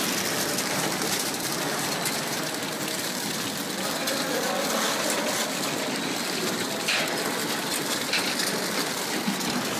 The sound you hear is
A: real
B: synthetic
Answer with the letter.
A